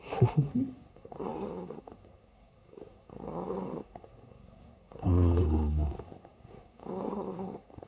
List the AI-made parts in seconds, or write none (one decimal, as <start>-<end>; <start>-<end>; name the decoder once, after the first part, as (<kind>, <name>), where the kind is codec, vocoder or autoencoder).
0.0-7.9 (codec, SNAC)